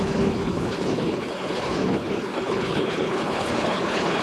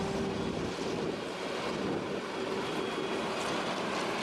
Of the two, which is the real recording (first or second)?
second